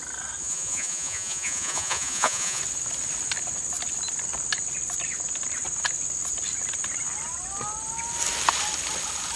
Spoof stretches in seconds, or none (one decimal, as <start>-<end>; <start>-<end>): 0.4-2.6